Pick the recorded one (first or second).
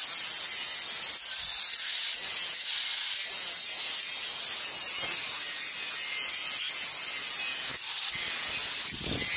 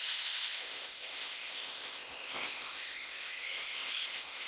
first